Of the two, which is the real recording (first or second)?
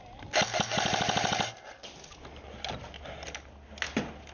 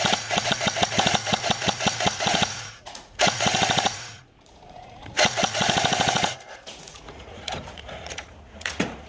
first